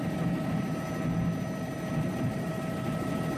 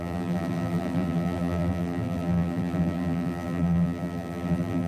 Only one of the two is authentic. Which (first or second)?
first